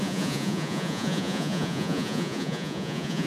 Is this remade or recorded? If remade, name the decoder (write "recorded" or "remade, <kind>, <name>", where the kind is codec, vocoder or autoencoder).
remade, vocoder, Vocos